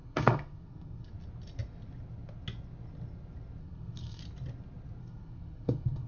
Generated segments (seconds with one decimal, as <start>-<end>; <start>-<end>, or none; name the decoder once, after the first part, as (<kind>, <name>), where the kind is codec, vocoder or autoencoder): 0.0-1.1 (codec, SNAC); 3.6-4.2; 5.0-6.1